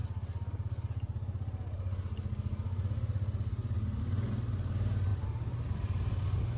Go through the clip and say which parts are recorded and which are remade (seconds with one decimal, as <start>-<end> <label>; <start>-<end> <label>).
0.0-6.6 recorded